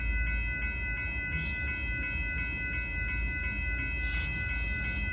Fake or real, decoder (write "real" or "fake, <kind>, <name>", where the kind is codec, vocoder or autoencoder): real